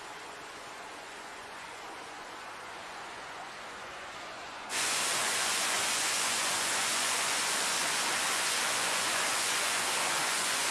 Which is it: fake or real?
fake